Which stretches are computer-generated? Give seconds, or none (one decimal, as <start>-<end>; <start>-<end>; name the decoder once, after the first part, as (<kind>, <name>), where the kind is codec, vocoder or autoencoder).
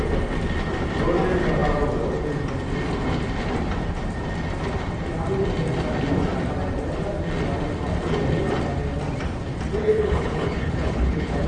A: 9.8-11.5 (codec, HILCodec)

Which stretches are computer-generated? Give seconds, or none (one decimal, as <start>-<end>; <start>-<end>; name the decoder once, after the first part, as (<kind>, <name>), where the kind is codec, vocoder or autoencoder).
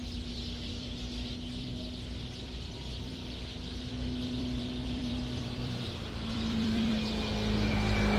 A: 0.7-1.7 (vocoder, BigVGAN v2); 2.4-3.2; 3.9-6.9; 7.7-8.2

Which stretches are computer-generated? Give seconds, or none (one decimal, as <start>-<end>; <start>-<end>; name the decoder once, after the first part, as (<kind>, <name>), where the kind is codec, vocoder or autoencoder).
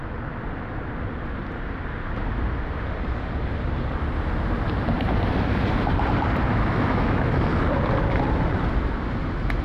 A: 6.5-7.4 (autoencoder, DAC-VAE)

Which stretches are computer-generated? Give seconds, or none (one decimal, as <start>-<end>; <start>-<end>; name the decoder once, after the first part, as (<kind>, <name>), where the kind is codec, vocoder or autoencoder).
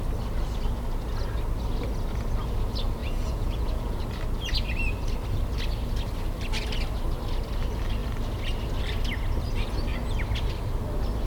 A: 3.0-4.0 (vocoder, Vocos)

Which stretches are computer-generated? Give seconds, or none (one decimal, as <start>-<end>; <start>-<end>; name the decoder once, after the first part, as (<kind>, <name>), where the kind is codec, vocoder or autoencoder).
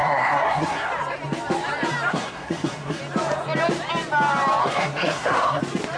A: 0.0-0.9 (codec, SNAC); 2.1-3.0; 4.6-5.6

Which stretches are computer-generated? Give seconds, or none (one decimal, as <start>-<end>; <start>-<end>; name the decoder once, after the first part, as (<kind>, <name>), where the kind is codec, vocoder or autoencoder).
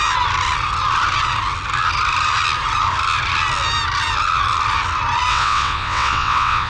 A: 5.3-6.7 (vocoder, WaveNeXt)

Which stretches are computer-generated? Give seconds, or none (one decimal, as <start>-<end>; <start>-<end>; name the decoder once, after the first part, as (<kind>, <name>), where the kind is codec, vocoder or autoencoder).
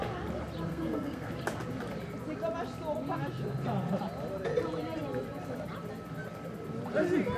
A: 0.7-1.3 (codec, SNAC)